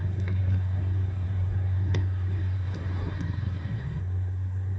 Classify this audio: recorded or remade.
remade